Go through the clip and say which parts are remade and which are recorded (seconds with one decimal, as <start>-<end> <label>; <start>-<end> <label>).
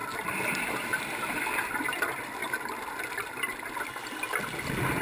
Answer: 0.0-2.2 remade; 2.2-5.0 recorded